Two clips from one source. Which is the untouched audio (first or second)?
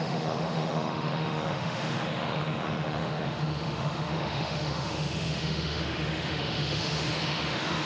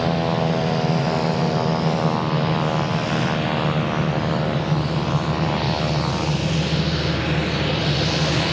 second